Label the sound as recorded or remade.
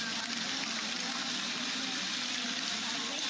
recorded